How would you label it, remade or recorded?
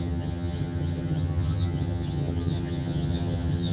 remade